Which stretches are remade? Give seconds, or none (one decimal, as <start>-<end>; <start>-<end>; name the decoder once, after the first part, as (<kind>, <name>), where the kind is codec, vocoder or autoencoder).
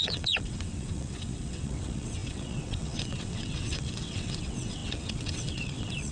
0.0-6.1 (vocoder, WaveNeXt)